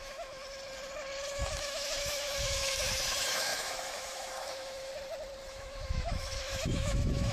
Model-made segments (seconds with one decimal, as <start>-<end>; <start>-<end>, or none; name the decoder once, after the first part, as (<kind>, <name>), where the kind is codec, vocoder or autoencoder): 0.0-0.4 (autoencoder, DAC-VAE); 1.5-4.9; 5.5-7.3